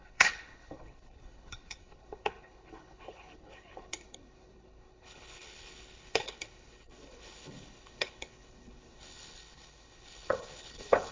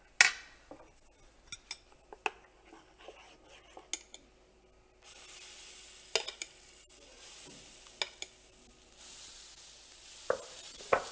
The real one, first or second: second